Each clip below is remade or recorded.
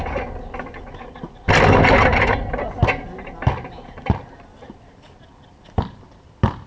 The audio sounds recorded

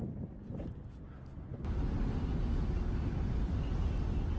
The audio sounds recorded